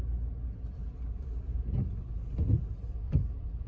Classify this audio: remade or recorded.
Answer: recorded